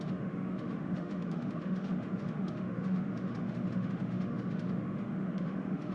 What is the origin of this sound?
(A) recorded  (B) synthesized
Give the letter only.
B